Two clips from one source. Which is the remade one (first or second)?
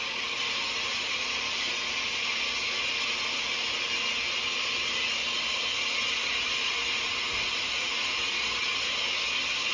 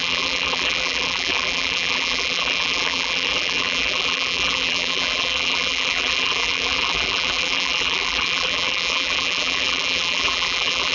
second